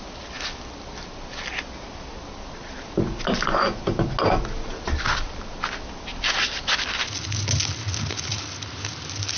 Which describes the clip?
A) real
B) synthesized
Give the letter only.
A